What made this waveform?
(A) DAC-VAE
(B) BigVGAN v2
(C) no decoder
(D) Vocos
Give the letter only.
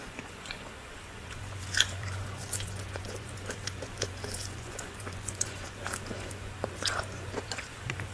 D